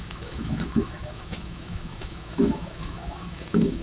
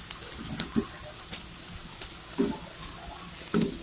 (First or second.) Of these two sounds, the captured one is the second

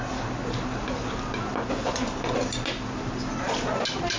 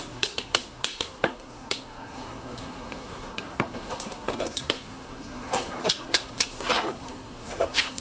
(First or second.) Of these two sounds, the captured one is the first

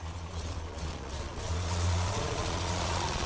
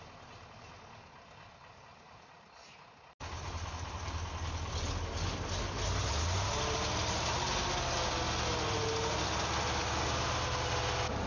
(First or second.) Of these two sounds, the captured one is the second